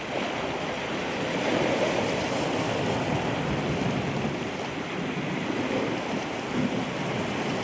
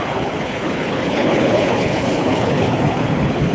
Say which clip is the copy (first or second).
second